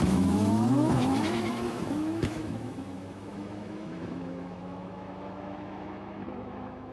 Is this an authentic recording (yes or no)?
no